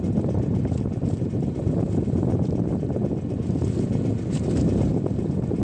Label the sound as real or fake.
fake